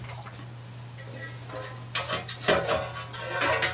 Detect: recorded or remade recorded